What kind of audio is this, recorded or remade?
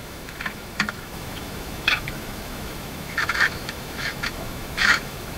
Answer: remade